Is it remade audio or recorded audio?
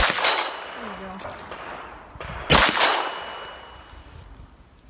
recorded